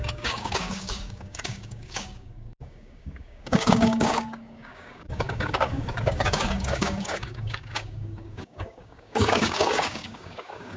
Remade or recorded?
remade